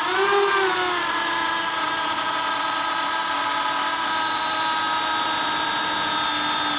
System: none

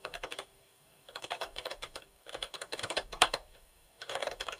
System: codec, DAC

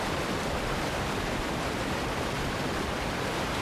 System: vocoder, BigVGAN v2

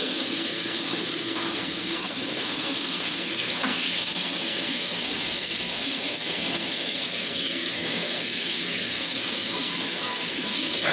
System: codec, SNAC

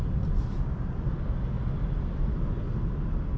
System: none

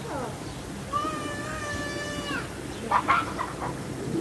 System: none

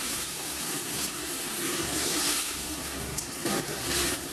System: codec, SNAC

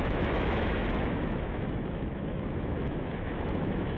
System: autoencoder, DAC-VAE